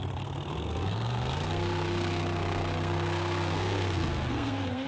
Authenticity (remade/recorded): remade